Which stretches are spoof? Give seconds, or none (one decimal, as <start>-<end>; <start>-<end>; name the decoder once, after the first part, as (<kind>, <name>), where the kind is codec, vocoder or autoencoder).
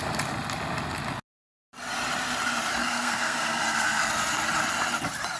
2.8-4.1 (codec, SNAC)